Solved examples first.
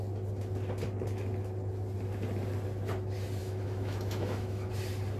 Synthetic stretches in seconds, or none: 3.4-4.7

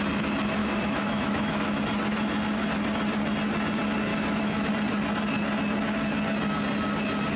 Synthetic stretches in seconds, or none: 0.6-1.8; 4.1-4.7